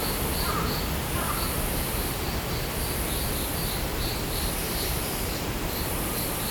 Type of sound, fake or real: real